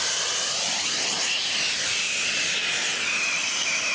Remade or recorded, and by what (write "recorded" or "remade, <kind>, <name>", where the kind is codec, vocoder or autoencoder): recorded